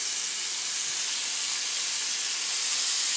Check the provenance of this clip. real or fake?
real